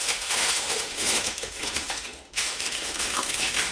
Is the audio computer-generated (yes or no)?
yes